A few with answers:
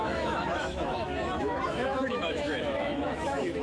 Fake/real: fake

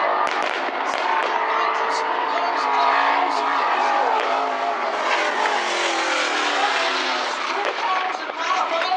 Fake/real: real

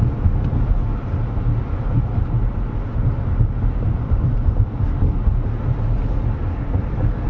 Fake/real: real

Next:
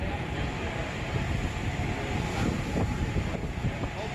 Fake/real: real